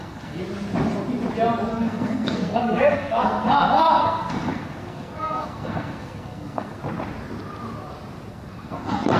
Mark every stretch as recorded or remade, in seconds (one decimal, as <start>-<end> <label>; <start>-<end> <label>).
0.0-0.4 remade; 0.4-1.7 recorded; 1.7-6.8 remade; 6.8-8.3 recorded; 8.3-9.2 remade